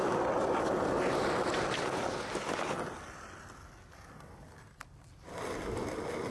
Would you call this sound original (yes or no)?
yes